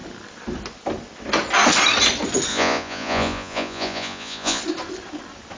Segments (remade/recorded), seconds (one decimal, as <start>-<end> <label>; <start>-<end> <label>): 0.0-2.5 recorded; 2.5-4.6 remade; 4.6-5.6 recorded